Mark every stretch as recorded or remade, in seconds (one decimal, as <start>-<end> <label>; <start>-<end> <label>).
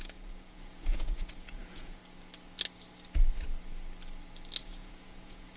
0.0-2.0 remade; 2.0-4.6 recorded; 4.6-5.6 remade